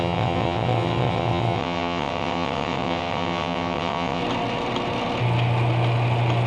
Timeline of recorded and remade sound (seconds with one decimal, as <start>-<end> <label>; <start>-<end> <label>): 0.0-4.2 remade; 4.2-6.5 recorded